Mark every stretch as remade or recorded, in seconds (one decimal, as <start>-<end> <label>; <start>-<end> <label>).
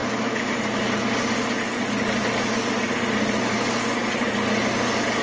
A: 0.0-5.2 recorded